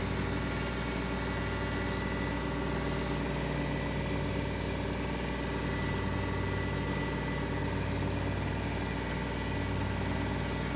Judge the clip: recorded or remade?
recorded